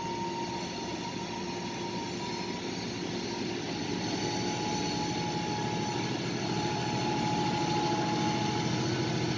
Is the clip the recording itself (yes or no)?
yes